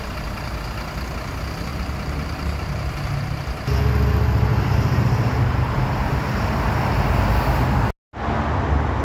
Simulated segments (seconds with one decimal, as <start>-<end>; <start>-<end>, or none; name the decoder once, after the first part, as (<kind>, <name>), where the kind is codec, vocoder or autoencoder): 1.7-2.9 (vocoder, BigVGAN v2); 4.5-6.5